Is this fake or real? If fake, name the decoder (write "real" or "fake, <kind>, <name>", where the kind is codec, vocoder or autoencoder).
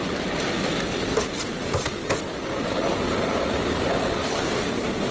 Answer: real